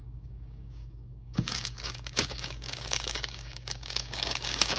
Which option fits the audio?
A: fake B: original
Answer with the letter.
A